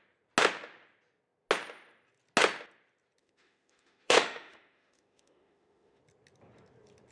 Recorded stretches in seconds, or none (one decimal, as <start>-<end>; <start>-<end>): 0.0-3.2; 6.0-7.1